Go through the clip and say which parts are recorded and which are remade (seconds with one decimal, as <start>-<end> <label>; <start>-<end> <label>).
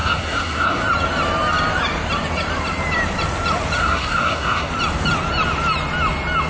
0.0-0.8 remade; 0.8-3.8 recorded; 3.8-4.7 remade; 4.7-6.5 recorded